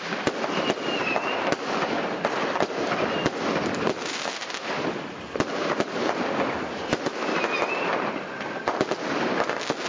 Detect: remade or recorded recorded